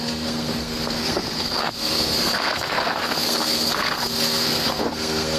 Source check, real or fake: fake